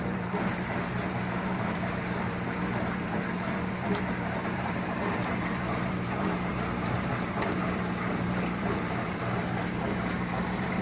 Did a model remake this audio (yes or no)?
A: yes